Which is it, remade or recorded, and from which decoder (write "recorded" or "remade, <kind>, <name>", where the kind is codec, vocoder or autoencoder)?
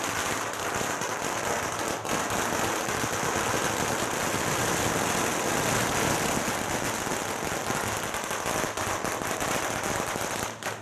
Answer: recorded